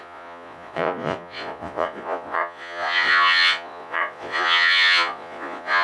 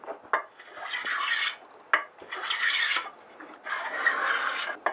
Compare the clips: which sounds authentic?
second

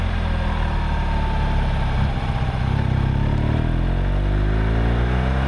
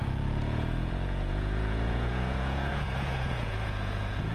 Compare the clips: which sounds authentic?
first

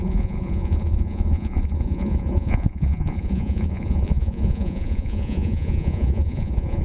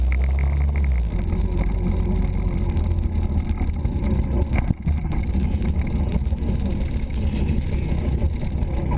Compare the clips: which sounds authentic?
second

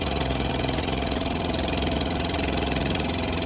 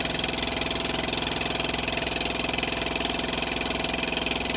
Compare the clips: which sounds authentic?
second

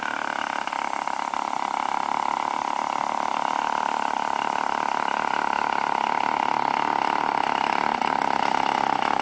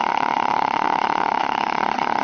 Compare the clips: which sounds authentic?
first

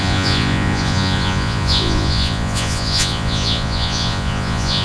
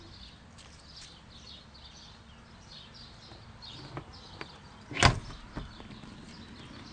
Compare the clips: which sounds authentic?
second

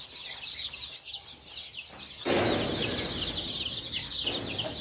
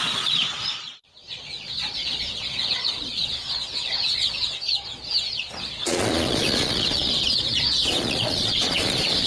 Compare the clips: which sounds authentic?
first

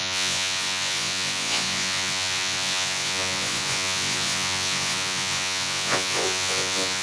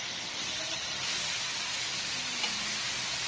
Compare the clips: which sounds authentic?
second